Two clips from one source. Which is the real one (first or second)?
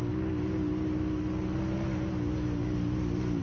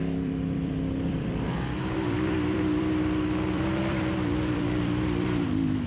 first